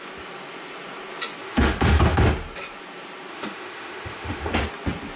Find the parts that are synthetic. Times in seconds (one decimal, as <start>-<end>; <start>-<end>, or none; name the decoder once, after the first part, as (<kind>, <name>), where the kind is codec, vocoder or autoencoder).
1.4-2.0 (autoencoder, DAC-VAE); 3.3-4.5